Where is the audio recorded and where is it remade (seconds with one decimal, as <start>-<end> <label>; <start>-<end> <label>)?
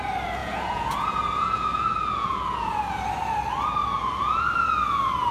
0.0-0.4 recorded; 0.4-2.9 remade; 2.9-3.8 recorded; 3.8-5.3 remade